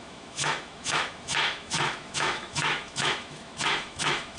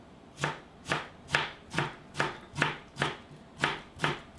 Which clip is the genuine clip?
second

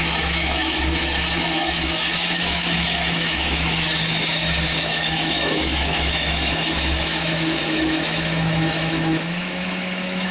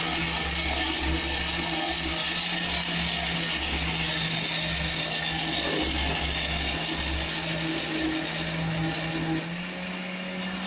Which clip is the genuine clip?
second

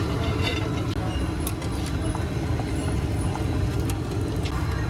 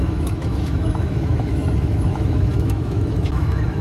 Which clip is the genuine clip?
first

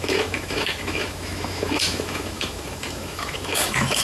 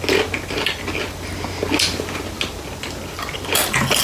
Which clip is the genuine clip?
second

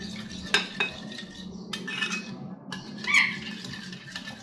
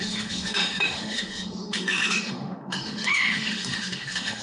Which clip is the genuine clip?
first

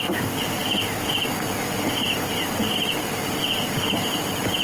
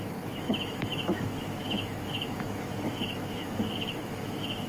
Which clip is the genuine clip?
first